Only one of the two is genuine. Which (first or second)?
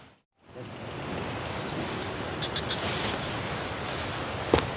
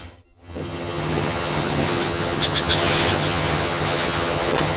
first